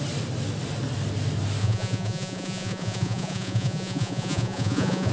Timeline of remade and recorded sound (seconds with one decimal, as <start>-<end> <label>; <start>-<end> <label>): 0.0-1.6 recorded; 1.6-5.1 remade